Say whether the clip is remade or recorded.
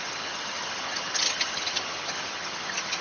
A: remade